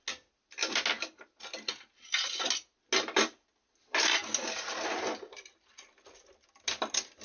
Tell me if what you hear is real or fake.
real